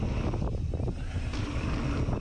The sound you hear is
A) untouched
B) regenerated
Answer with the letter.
A